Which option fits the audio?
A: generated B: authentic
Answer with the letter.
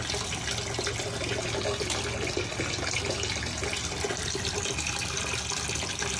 B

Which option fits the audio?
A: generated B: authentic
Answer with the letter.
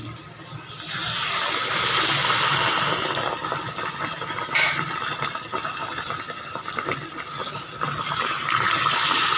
B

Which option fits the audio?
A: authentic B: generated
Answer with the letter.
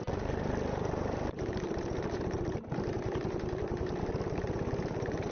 B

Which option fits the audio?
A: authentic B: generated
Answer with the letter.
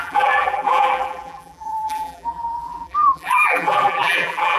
B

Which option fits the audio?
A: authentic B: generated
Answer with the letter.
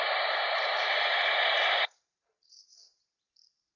B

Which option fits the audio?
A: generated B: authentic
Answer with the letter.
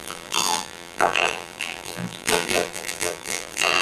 A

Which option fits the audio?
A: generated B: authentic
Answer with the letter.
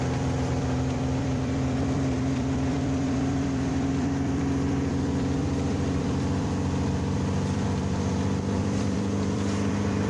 A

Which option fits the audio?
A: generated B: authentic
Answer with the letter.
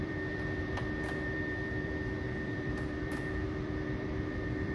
A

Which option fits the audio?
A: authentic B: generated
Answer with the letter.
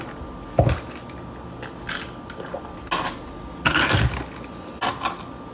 A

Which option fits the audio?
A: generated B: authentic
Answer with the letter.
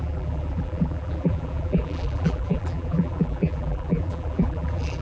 A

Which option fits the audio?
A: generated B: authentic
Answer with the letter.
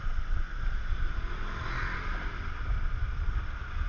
B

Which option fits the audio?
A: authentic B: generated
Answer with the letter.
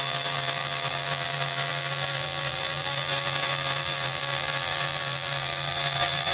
B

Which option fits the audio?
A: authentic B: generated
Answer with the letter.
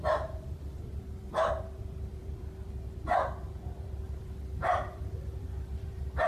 B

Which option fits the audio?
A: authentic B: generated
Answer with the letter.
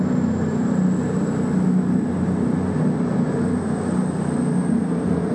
A